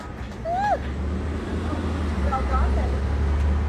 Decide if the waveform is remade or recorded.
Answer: recorded